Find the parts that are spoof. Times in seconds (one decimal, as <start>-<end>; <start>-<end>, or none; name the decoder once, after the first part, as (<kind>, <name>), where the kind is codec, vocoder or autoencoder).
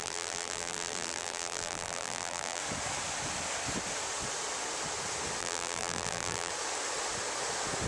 0.0-2.6 (vocoder, BigVGAN v2); 5.4-6.5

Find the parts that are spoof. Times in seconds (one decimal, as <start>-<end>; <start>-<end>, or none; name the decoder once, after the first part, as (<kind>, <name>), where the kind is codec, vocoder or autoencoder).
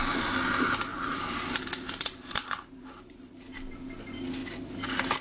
0.9-4.0 (vocoder, BigVGAN v2)